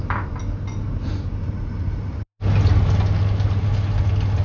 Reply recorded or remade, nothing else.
recorded